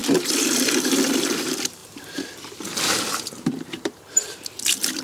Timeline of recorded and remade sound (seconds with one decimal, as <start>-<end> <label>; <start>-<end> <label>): 0.0-5.0 remade